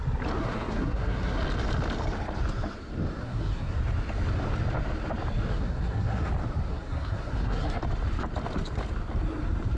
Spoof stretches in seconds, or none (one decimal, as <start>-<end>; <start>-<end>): 0.4-1.4; 3.2-3.8; 5.5-6.3; 6.7-7.8